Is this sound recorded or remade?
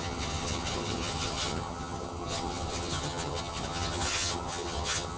remade